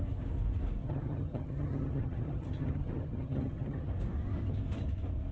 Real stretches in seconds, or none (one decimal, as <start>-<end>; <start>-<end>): 0.0-0.8; 3.9-5.3